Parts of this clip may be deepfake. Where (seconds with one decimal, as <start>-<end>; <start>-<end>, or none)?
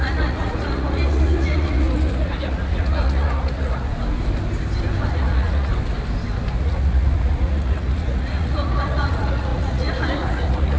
0.0-3.9; 5.1-5.7; 6.6-10.8